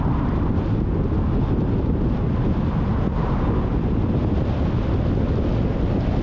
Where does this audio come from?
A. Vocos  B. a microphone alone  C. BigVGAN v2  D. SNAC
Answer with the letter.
B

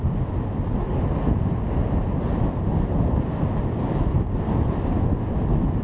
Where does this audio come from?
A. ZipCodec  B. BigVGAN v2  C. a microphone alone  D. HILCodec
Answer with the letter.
C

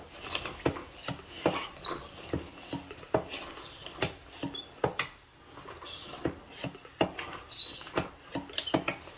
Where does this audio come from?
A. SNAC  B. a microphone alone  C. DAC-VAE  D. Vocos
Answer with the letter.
B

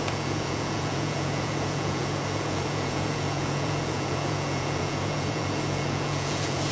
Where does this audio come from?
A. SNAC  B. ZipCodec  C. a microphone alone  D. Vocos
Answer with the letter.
D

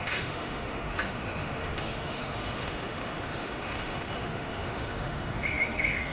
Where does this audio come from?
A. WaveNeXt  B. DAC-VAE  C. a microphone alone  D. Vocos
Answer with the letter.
B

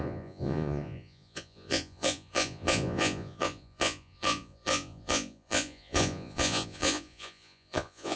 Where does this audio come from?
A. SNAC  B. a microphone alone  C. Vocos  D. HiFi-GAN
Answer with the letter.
C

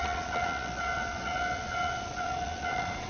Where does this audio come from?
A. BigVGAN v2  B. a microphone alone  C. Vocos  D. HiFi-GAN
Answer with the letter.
C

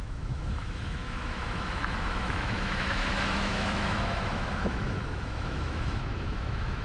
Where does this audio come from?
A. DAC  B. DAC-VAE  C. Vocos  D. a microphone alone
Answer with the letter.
B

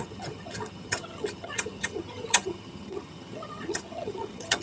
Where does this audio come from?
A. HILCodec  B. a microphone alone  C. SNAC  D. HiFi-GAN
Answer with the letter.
D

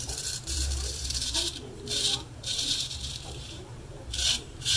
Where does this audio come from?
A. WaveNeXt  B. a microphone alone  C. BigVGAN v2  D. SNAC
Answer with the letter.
C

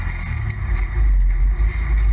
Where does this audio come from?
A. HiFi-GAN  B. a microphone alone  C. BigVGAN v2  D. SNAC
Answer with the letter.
B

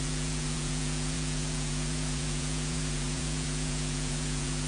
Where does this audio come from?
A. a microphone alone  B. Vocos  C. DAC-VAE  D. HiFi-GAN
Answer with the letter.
B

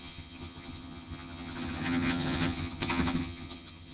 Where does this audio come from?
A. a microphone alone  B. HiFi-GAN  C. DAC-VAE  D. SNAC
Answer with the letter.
B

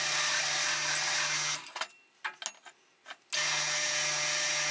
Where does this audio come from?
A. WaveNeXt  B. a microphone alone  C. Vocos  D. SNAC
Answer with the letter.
B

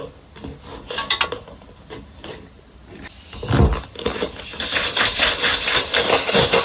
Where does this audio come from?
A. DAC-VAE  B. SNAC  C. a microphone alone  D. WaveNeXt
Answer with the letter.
C